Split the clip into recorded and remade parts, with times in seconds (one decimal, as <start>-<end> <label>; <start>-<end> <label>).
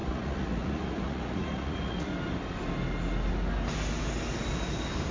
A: 0.0-2.1 remade; 2.1-5.1 recorded